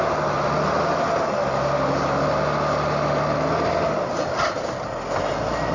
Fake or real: real